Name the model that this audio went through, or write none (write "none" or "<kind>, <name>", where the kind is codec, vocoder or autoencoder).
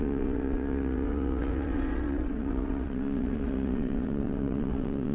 vocoder, WaveNeXt